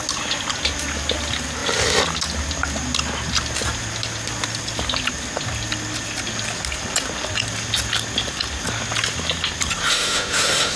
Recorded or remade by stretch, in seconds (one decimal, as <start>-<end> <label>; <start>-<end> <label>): 0.0-9.9 recorded; 9.9-10.8 remade